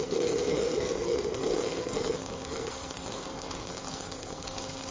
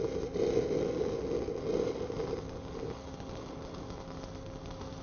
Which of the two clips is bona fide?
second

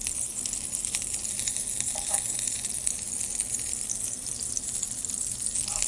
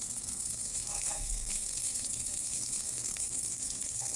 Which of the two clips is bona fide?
first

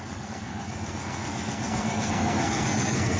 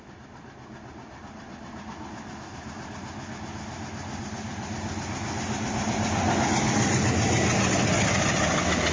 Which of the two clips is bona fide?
second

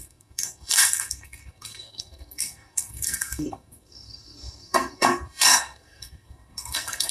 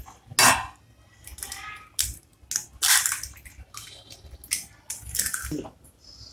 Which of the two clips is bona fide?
second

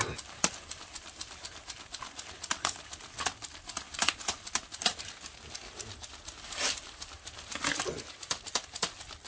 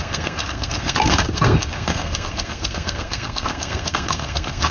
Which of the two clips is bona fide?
first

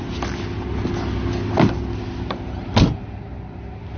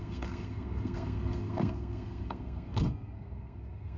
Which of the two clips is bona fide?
first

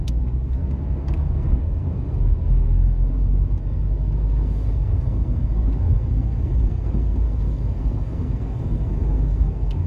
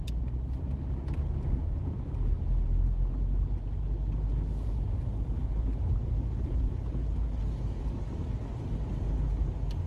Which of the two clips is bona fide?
second